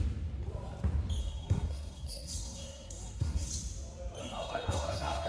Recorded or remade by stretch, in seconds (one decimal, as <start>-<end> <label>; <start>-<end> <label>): 0.0-1.2 recorded; 1.2-3.5 remade; 3.5-4.2 recorded; 4.2-5.3 remade